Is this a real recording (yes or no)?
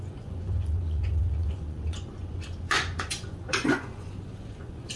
no